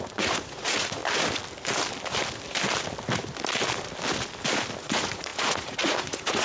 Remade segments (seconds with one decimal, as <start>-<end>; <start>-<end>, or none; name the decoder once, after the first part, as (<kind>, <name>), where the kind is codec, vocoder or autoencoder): 0.0-1.0 (vocoder, Vocos); 4.8-6.4